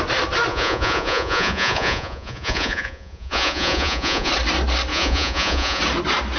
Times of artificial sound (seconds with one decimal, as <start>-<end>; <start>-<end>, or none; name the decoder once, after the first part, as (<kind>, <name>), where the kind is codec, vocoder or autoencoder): 0.5-4.3 (vocoder, Vocos); 4.9-5.8